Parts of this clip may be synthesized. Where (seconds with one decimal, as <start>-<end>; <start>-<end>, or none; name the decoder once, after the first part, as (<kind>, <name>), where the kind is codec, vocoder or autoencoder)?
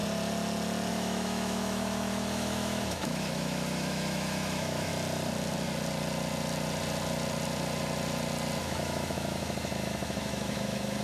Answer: 0.9-4.9 (autoencoder, DAC-VAE); 8.6-11.0